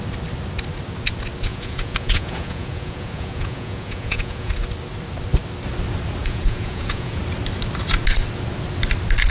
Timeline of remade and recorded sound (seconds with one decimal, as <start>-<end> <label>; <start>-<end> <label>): 0.0-1.5 recorded; 1.5-4.5 remade; 4.5-6.2 recorded; 6.2-7.2 remade; 7.2-9.3 recorded